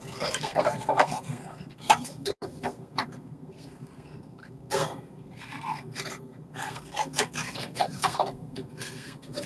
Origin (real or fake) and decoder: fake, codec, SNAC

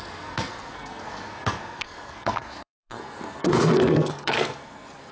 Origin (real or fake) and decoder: fake, codec, SNAC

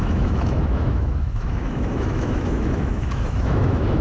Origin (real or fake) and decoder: fake, autoencoder, DAC-VAE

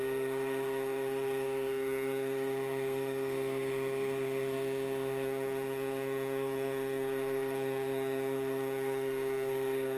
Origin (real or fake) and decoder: fake, codec, SNAC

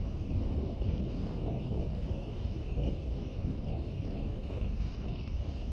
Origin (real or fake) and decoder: fake, codec, DAC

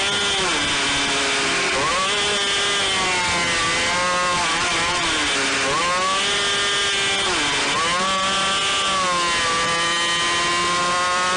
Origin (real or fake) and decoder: real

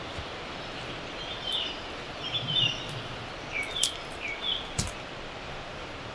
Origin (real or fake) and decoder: fake, vocoder, BigVGAN v2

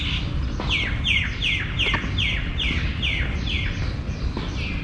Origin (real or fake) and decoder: real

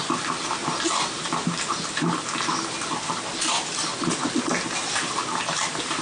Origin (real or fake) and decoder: real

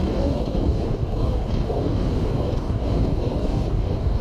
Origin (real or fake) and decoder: fake, codec, DAC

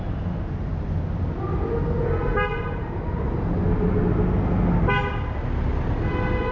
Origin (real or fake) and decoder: real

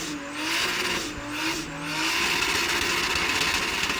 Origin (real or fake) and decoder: real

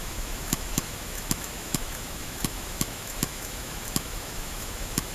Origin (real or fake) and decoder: fake, autoencoder, DAC-VAE